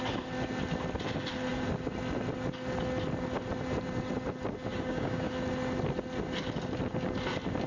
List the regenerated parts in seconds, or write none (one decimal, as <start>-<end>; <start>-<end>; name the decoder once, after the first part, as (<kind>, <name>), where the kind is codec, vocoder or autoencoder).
4.7-5.3 (codec, DAC)